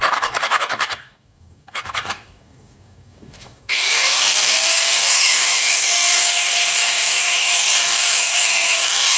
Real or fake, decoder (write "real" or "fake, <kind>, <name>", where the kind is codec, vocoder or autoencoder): fake, codec, DAC